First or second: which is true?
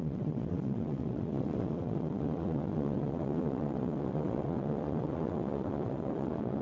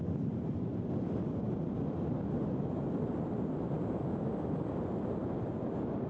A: second